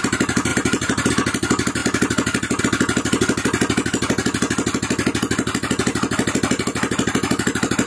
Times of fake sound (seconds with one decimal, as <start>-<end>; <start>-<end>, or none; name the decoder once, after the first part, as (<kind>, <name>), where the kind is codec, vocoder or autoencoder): 0.5-1.1 (vocoder, BigVGAN v2)